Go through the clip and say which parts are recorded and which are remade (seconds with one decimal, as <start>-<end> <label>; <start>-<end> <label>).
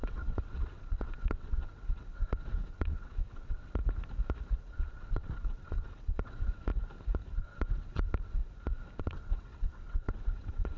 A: 0.0-3.8 remade; 3.8-4.6 recorded; 4.6-6.7 remade; 6.7-7.3 recorded; 7.3-8.4 remade; 8.4-9.0 recorded; 9.0-10.8 remade